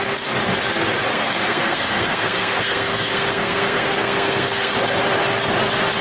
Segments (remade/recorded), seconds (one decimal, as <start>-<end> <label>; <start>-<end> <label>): 0.0-1.1 recorded; 1.1-4.7 remade; 4.7-6.0 recorded